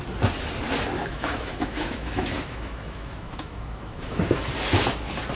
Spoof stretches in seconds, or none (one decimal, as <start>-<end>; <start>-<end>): 1.0-4.2